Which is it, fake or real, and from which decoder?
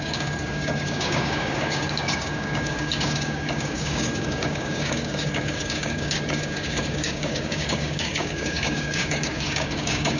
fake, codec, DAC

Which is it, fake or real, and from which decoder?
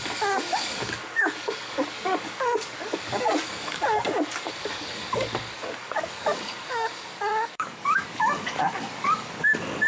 fake, codec, DAC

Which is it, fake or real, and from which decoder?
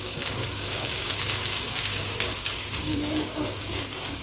fake, codec, DAC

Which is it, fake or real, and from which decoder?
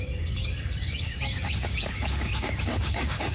fake, codec, DAC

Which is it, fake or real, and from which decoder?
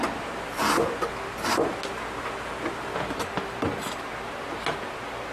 real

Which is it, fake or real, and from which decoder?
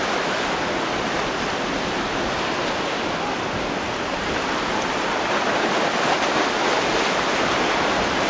real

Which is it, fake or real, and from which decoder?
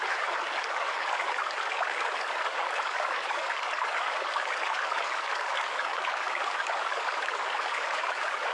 fake, codec, DAC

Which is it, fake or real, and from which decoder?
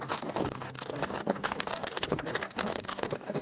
fake, codec, DAC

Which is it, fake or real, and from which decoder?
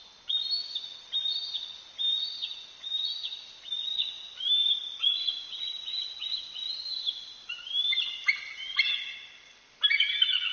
real